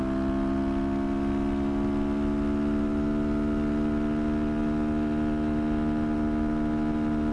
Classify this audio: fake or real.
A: real